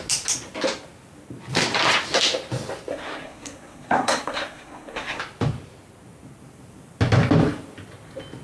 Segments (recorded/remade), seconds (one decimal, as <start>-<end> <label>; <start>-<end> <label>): 0.0-2.9 recorded; 2.9-5.2 remade; 5.2-8.4 recorded